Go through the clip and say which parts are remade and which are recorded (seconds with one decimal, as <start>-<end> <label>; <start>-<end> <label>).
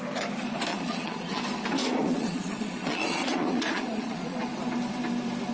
0.0-0.7 recorded; 0.7-1.4 remade; 1.4-1.8 recorded; 1.8-4.4 remade; 4.4-5.5 recorded